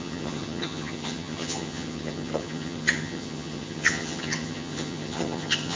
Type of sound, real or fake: fake